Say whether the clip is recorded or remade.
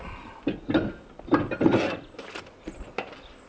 recorded